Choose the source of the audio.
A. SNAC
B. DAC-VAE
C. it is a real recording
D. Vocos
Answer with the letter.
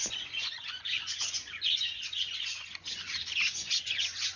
D